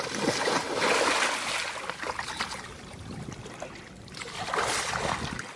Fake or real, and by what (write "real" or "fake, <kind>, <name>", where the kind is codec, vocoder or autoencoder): real